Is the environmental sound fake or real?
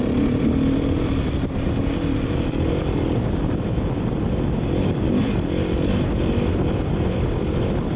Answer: real